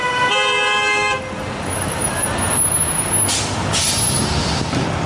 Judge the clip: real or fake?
real